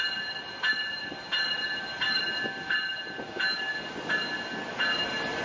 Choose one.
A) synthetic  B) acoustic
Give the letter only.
B